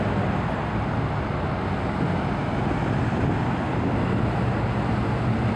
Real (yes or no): yes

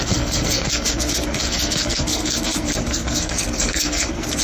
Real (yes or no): no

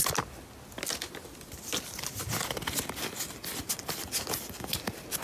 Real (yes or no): yes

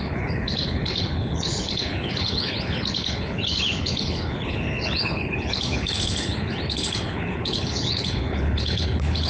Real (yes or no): no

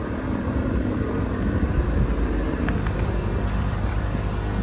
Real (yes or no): yes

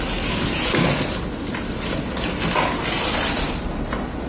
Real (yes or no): yes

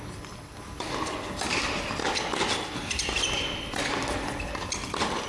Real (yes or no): yes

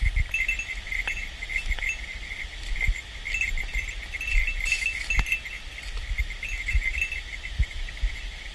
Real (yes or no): yes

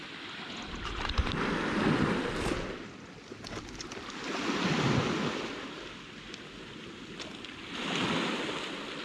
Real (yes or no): yes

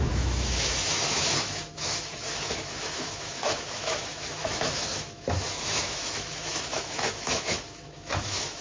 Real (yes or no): no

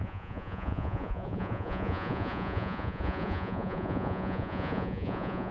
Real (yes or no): no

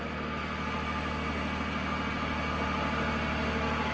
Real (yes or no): yes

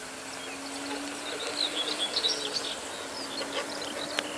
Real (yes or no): yes